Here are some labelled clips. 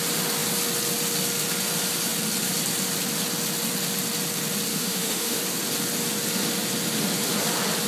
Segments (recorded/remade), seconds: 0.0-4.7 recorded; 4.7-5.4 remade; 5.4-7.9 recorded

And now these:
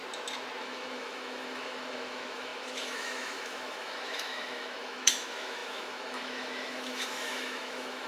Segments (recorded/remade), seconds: 0.0-0.6 recorded; 0.6-8.1 remade

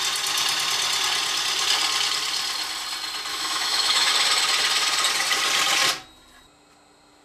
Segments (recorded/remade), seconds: 0.0-3.3 recorded; 3.3-4.1 remade; 4.1-7.2 recorded

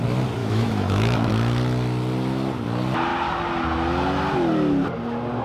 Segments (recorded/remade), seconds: 0.0-0.4 recorded; 0.4-1.3 remade; 1.3-5.4 recorded

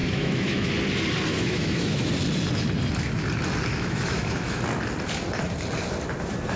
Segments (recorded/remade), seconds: 0.0-0.7 remade; 0.7-1.3 recorded; 1.3-2.1 remade; 2.1-3.7 recorded; 3.7-4.6 remade; 4.6-6.6 recorded

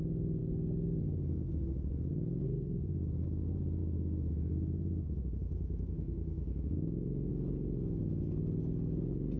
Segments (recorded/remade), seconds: 0.0-3.8 recorded; 3.8-7.3 remade; 7.3-9.4 recorded

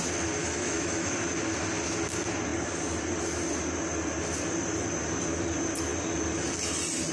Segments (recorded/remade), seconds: 0.0-0.4 recorded; 0.4-1.1 remade; 1.1-7.1 recorded